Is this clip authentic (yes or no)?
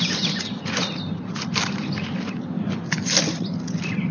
yes